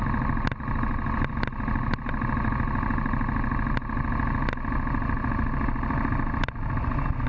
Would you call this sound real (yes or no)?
yes